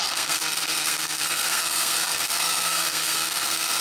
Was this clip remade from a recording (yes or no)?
yes